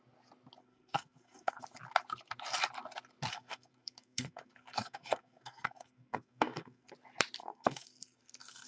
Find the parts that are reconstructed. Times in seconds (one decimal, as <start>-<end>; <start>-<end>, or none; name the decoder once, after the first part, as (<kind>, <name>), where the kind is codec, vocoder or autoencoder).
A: 0.6-1.6 (codec, SNAC); 3.3-6.9; 7.4-8.7